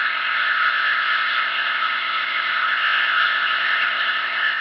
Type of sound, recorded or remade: remade